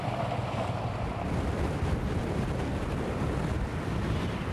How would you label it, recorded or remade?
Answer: remade